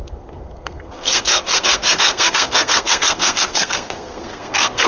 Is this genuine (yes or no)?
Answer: no